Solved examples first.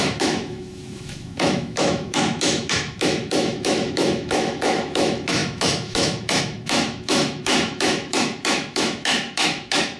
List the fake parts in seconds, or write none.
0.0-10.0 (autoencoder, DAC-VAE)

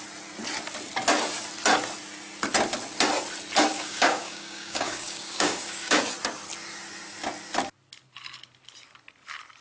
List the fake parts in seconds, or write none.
3.7-6.0 (codec, DAC)

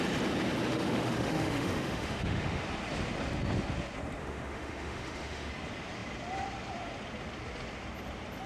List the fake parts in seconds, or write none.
0.7-2.6 (autoencoder, DAC-VAE); 4.2-5.5

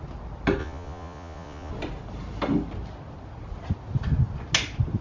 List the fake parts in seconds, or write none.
0.6-1.7 (vocoder, Vocos)

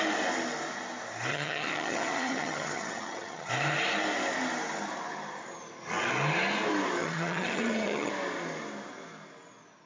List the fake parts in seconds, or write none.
1.3-3.5 (vocoder, HiFi-GAN); 7.0-8.1

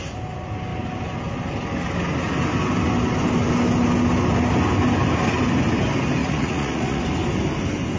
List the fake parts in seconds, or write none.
6.2-7.0 (vocoder, Vocos)

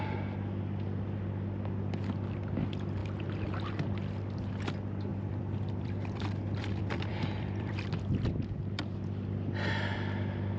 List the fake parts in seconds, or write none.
5.1-8.0 (vocoder, BigVGAN v2)